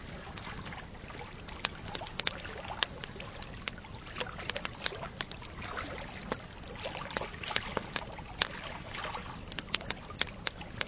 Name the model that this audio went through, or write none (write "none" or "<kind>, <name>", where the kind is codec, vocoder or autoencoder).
none